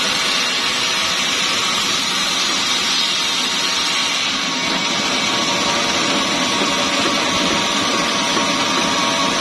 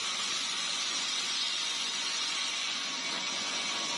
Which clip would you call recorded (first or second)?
first